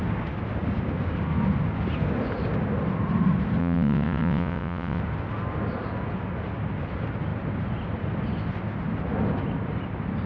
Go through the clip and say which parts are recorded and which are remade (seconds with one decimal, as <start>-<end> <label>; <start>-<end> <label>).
0.0-3.6 recorded; 3.6-5.0 remade; 5.0-10.3 recorded

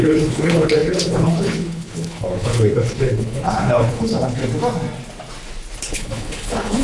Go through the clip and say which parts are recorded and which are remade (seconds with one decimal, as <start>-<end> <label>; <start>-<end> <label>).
0.0-4.4 remade; 4.4-5.8 recorded; 5.8-6.8 remade

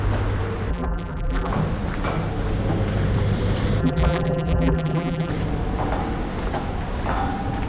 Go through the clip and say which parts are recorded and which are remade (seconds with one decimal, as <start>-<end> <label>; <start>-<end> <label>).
0.0-0.7 recorded; 0.7-1.5 remade; 1.5-3.8 recorded; 3.8-5.3 remade; 5.3-7.7 recorded

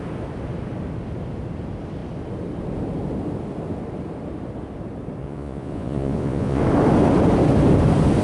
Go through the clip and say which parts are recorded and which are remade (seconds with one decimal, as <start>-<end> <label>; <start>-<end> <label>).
0.0-5.2 recorded; 5.2-6.6 remade; 6.6-8.2 recorded

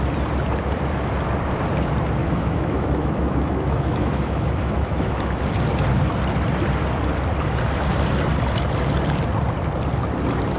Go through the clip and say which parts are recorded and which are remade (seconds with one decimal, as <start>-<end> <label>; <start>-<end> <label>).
0.0-2.2 recorded; 2.2-5.4 remade; 5.4-10.6 recorded